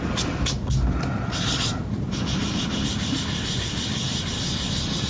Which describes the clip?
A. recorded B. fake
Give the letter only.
A